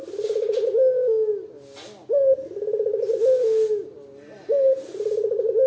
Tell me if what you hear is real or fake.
real